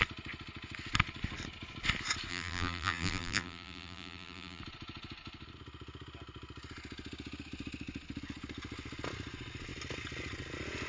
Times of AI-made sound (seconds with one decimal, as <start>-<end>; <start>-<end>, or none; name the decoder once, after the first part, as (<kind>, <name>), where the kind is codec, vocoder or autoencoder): 2.3-4.6 (vocoder, BigVGAN v2)